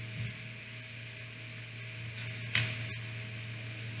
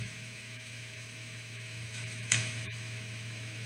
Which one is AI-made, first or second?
second